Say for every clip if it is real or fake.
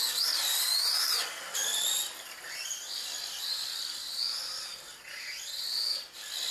real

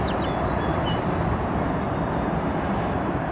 fake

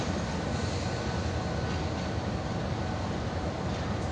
real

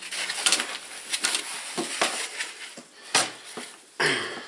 real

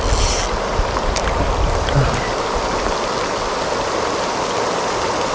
real